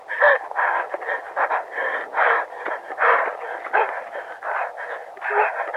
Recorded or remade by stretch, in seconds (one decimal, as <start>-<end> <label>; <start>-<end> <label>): 0.0-5.8 recorded

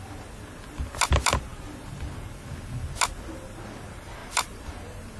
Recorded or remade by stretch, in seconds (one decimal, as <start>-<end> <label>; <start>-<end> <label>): 0.0-4.2 recorded; 4.2-4.7 remade; 4.7-5.2 recorded

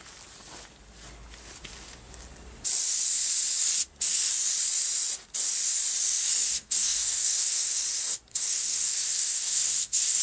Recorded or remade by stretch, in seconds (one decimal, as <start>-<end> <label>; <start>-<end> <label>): 0.0-6.5 recorded; 6.5-7.8 remade; 7.8-8.3 recorded; 8.3-10.2 remade